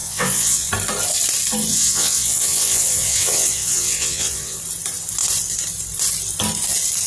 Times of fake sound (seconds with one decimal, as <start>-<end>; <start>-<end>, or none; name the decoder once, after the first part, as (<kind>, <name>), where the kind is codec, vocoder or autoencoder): 0.0-0.7 (vocoder, WaveNeXt); 1.7-4.6